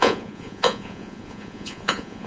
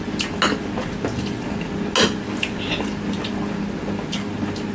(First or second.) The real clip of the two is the second